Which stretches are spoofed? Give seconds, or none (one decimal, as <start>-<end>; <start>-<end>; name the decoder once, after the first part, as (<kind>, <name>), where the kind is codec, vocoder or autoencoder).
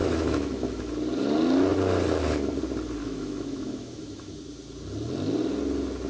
0.0-0.9 (autoencoder, DAC-VAE); 3.0-4.3